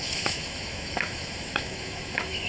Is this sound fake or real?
fake